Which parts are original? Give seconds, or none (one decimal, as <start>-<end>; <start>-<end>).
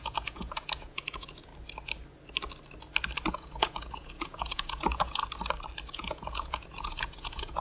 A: 1.5-3.3; 5.2-5.9